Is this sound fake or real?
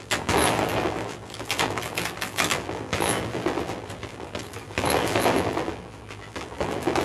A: fake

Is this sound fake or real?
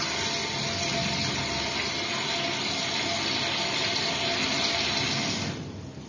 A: real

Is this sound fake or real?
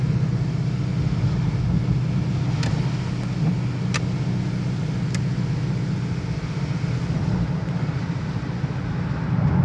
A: real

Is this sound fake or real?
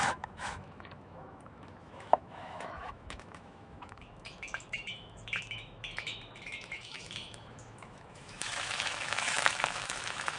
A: fake